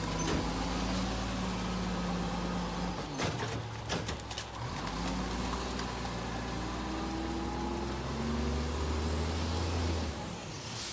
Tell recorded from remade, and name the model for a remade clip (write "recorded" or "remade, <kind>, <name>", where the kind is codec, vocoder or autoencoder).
recorded